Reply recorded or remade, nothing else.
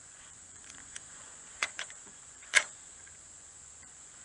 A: remade